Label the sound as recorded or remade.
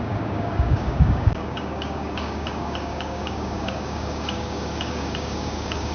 remade